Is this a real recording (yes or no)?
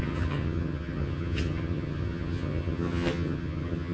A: no